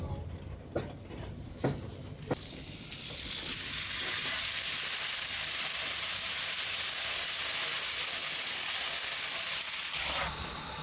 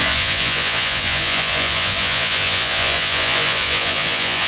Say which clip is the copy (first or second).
second